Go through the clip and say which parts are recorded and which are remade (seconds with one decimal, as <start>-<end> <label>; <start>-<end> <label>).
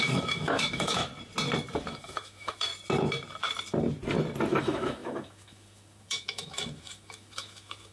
0.0-1.1 remade; 1.1-1.9 recorded; 1.9-2.7 remade; 2.7-4.6 recorded; 4.6-7.9 remade